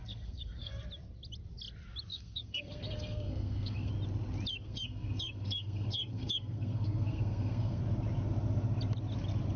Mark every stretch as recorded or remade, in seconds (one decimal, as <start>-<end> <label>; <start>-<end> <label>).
0.0-0.7 remade; 0.7-2.1 recorded; 2.1-3.9 remade; 3.9-4.5 recorded; 4.5-7.8 remade; 7.8-9.6 recorded